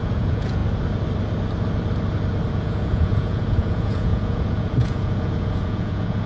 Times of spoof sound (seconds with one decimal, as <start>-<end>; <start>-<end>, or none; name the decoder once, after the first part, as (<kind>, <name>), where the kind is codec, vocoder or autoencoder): 0.0-0.6 (vocoder, Vocos); 2.5-6.3

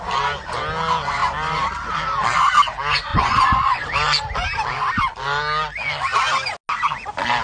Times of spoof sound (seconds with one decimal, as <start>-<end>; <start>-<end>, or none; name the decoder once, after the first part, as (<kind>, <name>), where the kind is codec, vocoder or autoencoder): 3.1-3.8 (vocoder, Vocos)

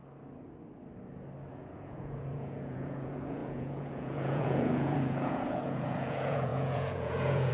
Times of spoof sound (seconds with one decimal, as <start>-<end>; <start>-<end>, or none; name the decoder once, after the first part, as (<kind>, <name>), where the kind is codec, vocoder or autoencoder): 1.5-7.5 (vocoder, Vocos)

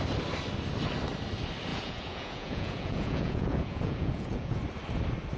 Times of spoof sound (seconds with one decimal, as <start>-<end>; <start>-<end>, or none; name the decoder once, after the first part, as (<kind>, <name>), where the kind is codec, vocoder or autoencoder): 1.7-4.6 (vocoder, Vocos)

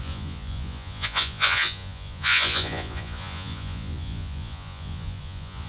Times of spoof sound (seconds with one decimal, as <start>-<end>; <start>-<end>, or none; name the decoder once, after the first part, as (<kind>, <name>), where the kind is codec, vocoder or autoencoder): 0.0-5.7 (vocoder, Vocos)

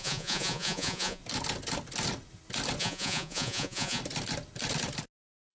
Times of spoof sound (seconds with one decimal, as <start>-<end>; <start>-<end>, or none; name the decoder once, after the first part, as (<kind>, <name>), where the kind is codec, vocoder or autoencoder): 0.0-1.2 (vocoder, Vocos); 2.8-4.0